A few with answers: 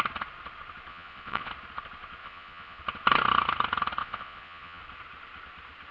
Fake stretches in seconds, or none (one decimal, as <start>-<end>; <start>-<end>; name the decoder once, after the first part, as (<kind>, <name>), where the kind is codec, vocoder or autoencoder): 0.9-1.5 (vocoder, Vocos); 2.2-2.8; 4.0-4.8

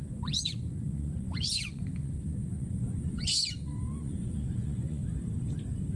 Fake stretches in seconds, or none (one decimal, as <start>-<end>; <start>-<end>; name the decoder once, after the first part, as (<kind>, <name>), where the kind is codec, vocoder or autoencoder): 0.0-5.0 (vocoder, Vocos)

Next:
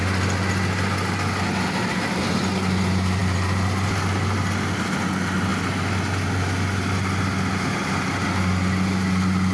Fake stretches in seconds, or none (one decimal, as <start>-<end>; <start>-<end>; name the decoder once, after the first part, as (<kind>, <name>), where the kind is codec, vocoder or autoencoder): none